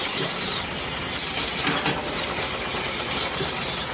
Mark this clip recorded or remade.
recorded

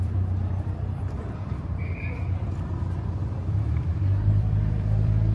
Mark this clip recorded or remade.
remade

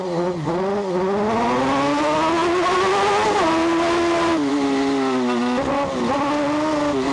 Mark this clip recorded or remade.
recorded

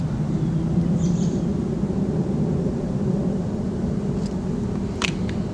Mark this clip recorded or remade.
remade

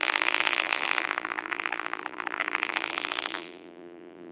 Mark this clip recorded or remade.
remade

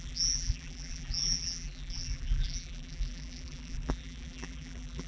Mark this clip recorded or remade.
remade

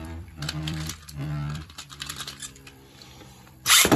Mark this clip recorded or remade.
remade